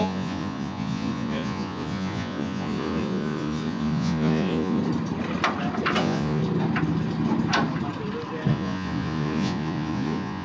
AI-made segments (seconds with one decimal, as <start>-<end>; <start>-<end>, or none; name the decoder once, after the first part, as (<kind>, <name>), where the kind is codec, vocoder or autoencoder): 0.0-4.8 (vocoder, Vocos); 6.0-6.4; 8.5-10.4

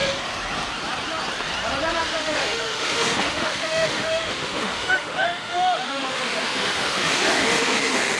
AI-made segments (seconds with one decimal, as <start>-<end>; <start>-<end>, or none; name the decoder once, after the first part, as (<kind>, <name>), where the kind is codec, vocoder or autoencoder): 2.0-8.2 (autoencoder, DAC-VAE)

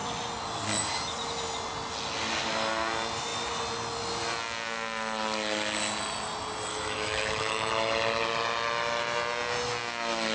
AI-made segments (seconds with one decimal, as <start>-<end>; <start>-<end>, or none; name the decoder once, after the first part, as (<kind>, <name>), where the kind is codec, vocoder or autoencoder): 6.7-7.7 (autoencoder, DAC-VAE)

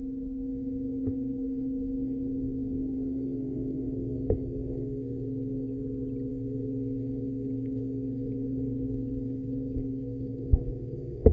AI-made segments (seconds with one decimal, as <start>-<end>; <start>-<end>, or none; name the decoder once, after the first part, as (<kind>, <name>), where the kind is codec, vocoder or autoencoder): 0.0-5.8 (codec, SNAC); 6.3-11.3

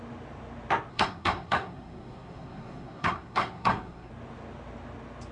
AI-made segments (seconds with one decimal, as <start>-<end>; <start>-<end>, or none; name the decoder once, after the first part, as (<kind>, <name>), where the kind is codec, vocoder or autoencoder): 0.9-4.1 (codec, SNAC)

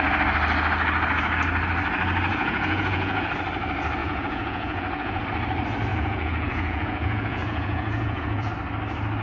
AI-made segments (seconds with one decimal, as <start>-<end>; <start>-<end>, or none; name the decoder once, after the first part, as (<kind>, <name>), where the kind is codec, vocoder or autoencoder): 2.3-3.3 (vocoder, Vocos); 4.0-5.2; 5.9-8.5

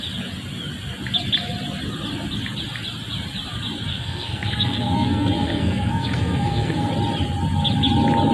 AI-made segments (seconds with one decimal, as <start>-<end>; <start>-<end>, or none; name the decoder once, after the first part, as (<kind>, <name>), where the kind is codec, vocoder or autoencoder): 3.9-6.9 (codec, SNAC)

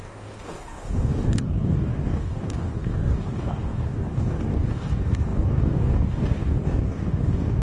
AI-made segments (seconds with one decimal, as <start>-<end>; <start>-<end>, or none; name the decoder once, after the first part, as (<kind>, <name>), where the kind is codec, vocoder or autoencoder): 0.0-7.6 (codec, DAC)